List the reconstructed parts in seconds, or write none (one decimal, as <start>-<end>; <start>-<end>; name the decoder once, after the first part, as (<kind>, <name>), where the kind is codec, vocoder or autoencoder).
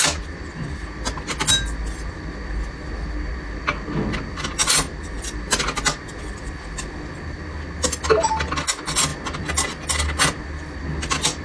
none